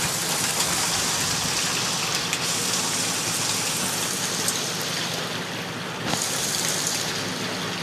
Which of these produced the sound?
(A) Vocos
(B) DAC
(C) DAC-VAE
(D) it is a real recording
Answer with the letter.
D